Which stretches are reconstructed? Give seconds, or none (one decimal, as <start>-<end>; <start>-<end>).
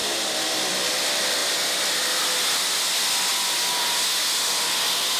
0.0-0.9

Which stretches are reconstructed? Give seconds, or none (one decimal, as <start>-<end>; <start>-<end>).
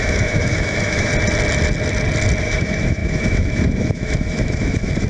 0.0-1.1; 2.4-5.1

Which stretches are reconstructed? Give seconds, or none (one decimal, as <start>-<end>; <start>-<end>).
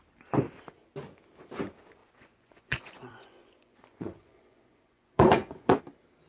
2.0-5.8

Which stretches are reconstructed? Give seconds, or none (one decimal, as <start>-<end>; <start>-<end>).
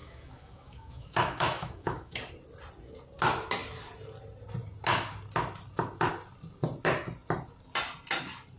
0.0-2.1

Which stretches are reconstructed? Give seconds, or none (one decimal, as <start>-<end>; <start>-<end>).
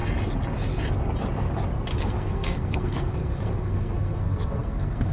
1.9-5.1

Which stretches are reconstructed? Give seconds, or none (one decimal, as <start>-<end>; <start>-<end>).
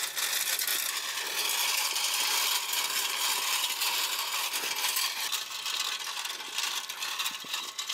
none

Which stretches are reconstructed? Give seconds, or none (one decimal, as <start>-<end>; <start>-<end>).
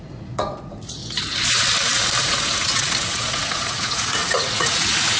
0.0-1.0; 2.2-5.2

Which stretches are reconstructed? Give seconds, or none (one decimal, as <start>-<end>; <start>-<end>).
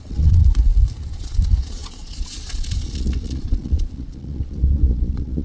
0.0-0.4; 1.0-5.4